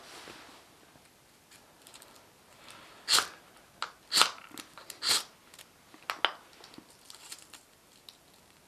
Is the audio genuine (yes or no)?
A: yes